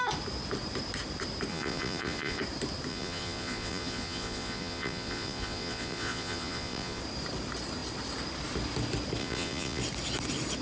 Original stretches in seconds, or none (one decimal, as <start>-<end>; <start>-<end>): 0.0-1.5; 2.4-2.9; 7.0-9.2; 9.8-10.6